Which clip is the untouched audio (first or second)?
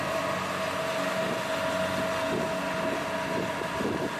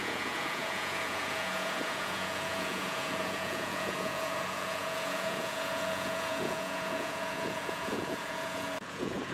first